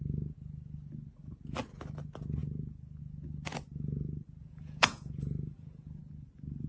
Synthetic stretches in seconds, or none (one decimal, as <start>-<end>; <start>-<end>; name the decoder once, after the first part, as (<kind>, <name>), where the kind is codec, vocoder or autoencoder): 4.4-6.0 (vocoder, Vocos)